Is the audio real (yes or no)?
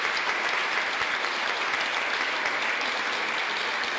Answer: yes